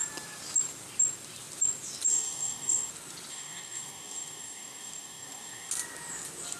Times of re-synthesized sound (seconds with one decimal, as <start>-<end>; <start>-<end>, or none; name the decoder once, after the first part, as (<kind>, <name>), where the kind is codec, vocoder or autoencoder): 2.1-2.9 (codec, DAC); 3.3-5.7